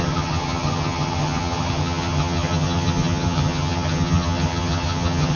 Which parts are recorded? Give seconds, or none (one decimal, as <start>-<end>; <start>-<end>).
none